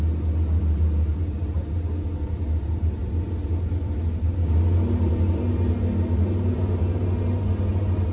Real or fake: real